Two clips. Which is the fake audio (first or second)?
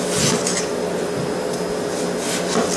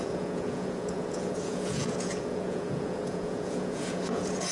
second